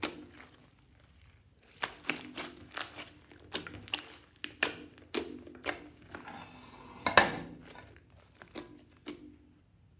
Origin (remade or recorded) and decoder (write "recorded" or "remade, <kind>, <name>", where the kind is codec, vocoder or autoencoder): recorded